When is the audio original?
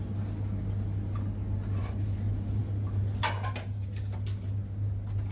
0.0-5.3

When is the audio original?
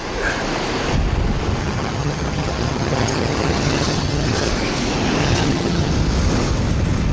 0.0-1.6; 4.5-5.2; 5.9-7.1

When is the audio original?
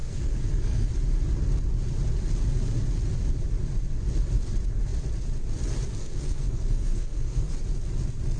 0.9-6.0; 7.5-8.4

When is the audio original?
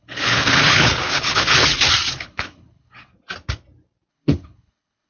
1.6-2.1; 3.1-4.1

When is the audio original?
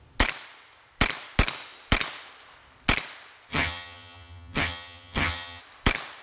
0.0-3.5; 5.6-6.2